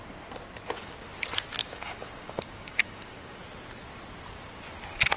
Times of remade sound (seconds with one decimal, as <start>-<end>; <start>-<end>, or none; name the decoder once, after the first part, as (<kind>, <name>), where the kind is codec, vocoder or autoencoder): 1.6-3.4 (codec, DAC)